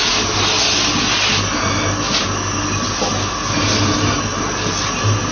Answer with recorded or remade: recorded